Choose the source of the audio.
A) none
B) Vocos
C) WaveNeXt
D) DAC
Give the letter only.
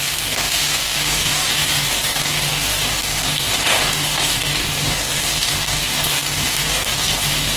D